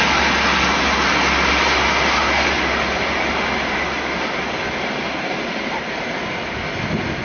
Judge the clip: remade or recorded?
recorded